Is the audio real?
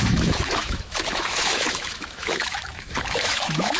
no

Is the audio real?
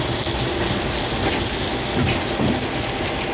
yes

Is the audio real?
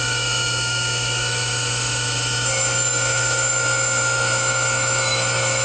no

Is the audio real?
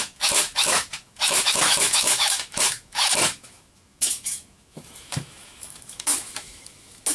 no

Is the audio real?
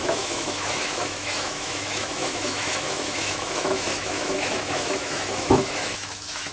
no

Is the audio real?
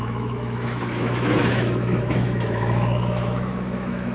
no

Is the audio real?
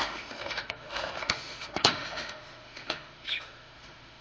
no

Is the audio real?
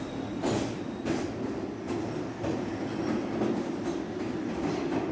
yes